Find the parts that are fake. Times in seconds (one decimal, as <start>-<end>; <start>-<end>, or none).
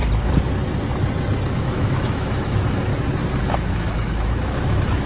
1.6-2.9; 3.4-5.1